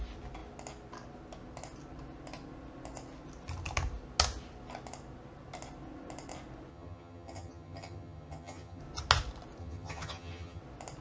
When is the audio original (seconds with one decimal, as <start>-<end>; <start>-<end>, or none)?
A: 0.0-6.7; 8.8-9.6; 10.6-11.0